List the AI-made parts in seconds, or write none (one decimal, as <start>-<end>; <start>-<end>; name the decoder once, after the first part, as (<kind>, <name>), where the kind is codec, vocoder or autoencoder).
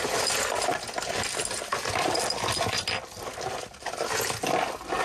1.7-3.6 (vocoder, BigVGAN v2)